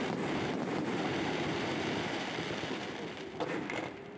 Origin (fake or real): fake